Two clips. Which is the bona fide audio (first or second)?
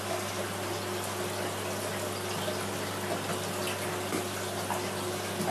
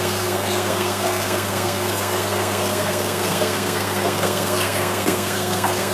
first